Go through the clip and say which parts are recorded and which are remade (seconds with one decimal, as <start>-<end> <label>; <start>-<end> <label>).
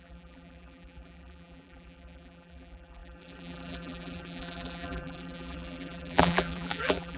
0.0-7.2 remade